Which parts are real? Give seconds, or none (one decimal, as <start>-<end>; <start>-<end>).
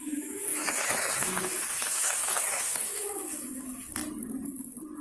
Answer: 4.0-5.0